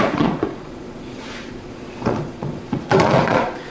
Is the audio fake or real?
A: fake